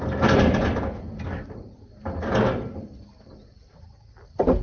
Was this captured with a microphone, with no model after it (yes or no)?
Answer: yes